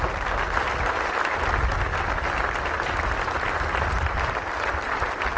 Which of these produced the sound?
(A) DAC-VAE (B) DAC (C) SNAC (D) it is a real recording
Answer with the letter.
D